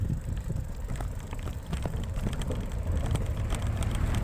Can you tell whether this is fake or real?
fake